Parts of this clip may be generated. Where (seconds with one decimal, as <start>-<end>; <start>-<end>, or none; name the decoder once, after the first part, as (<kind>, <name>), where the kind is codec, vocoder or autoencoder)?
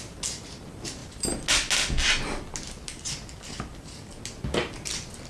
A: none